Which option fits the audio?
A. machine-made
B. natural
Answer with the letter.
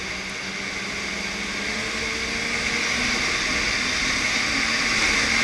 B